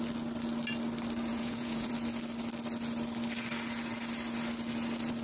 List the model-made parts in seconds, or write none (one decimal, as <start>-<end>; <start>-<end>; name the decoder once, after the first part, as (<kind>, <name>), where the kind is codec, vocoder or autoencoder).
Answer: 1.3-1.9 (vocoder, Vocos)